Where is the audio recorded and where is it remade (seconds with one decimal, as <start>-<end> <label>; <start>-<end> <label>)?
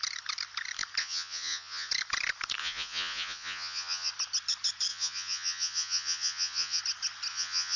0.0-1.0 recorded; 1.0-1.9 remade; 1.9-2.6 recorded; 2.6-4.1 remade; 4.1-4.9 recorded; 4.9-6.8 remade; 6.8-7.3 recorded; 7.3-7.8 remade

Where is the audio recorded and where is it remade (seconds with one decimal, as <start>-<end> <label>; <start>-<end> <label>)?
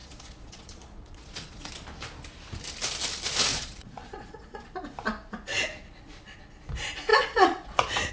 0.0-1.7 remade; 1.7-3.5 recorded; 3.5-4.6 remade; 4.6-5.5 recorded; 5.5-6.5 remade; 6.5-7.1 recorded; 7.1-8.1 remade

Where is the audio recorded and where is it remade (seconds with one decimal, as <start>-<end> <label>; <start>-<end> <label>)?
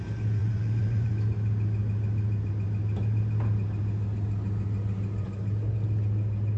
0.0-0.4 recorded; 0.4-1.1 remade; 1.1-6.6 recorded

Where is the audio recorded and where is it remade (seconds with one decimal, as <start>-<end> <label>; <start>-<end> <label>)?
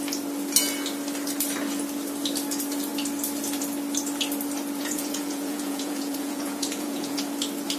0.0-4.8 recorded; 4.8-7.2 remade; 7.2-7.8 recorded